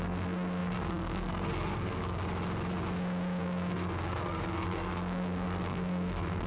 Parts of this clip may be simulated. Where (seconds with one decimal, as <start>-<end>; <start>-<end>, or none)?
0.0-2.2; 3.4-6.5

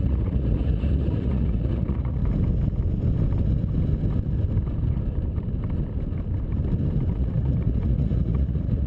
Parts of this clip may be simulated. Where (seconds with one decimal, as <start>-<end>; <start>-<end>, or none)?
0.0-2.2; 7.1-8.9

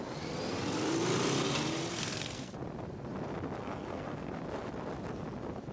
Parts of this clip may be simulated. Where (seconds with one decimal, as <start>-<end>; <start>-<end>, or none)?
1.9-2.5; 3.6-4.4

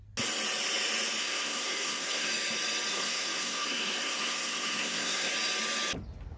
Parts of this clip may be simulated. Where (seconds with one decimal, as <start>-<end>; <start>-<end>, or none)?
1.2-2.3; 2.9-5.3

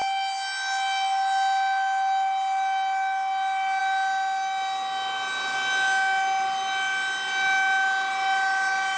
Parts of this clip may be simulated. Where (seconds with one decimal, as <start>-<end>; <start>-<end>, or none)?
none

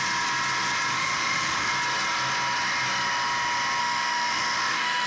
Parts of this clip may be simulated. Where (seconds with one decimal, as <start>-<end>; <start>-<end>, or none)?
0.9-1.7; 3.8-5.1